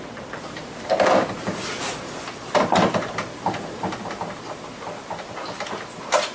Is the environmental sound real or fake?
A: real